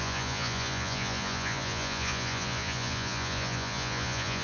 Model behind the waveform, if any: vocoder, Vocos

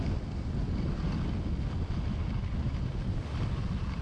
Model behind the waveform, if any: none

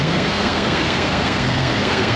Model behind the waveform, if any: codec, SNAC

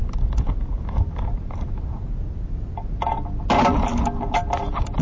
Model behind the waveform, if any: none